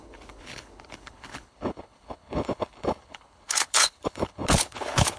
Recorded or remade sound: remade